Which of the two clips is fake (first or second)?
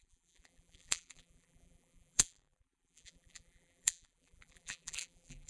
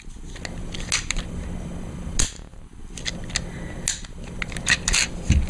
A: first